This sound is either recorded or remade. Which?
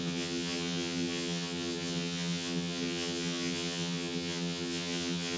remade